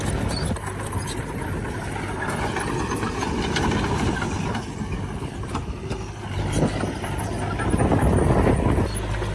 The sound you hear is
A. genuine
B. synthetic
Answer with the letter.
A